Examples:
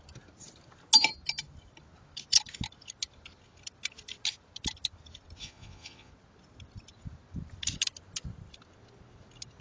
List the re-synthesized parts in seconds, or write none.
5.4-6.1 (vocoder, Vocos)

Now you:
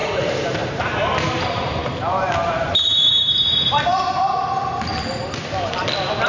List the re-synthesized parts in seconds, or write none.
0.0-3.8 (vocoder, BigVGAN v2)

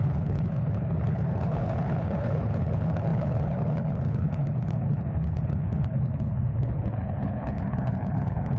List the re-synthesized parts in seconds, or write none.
0.0-8.6 (codec, HILCodec)

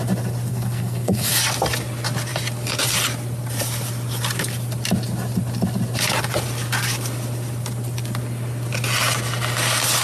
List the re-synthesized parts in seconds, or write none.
0.5-1.3 (codec, SNAC)

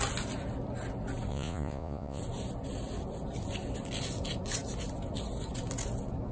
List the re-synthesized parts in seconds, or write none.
1.3-2.2 (vocoder, Vocos)